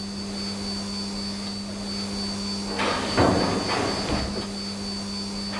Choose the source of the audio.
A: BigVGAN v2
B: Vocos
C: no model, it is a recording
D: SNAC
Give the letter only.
C